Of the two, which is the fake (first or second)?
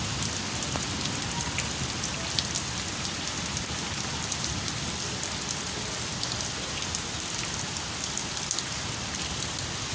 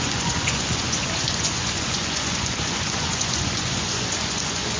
second